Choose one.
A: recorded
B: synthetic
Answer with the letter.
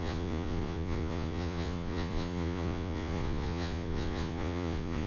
B